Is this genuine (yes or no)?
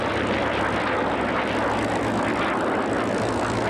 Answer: yes